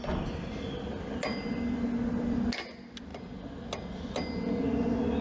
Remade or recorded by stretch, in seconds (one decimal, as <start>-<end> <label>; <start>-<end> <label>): 0.0-5.2 recorded